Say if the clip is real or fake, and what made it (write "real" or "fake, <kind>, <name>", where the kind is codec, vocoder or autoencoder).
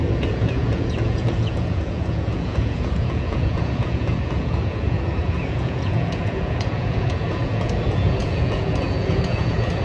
fake, vocoder, Vocos